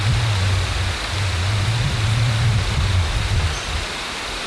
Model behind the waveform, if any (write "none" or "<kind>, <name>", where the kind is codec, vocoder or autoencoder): none